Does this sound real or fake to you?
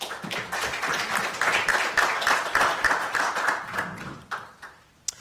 real